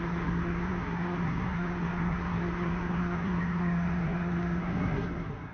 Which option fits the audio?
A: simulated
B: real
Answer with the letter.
A